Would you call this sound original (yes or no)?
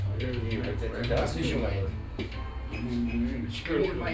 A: yes